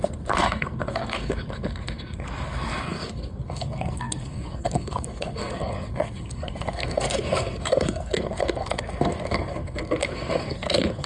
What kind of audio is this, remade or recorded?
remade